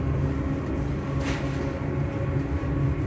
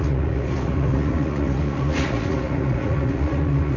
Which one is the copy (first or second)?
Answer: second